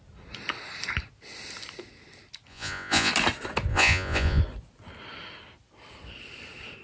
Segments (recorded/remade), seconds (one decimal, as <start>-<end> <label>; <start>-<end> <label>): 0.0-2.5 recorded; 2.5-3.1 remade; 3.1-3.7 recorded; 3.7-4.4 remade; 4.4-6.8 recorded